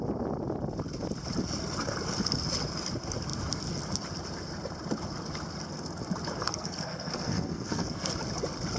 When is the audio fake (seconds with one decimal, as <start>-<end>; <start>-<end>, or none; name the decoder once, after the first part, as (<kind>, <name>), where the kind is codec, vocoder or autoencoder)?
6.4-8.1 (codec, SNAC)